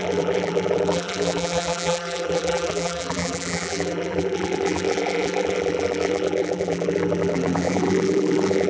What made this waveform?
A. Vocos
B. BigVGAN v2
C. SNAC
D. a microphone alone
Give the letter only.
B